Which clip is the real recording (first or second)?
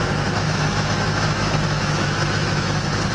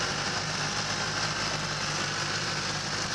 second